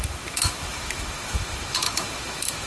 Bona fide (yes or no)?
no